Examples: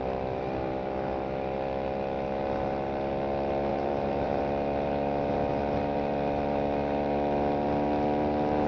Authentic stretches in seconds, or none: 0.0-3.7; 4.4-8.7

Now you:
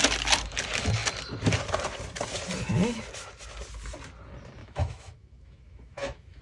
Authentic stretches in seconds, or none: 0.0-4.6